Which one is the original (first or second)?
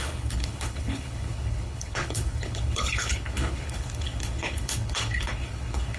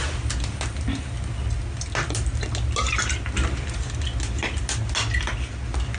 second